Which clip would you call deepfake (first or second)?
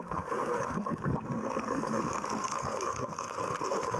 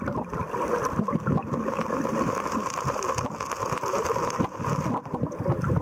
first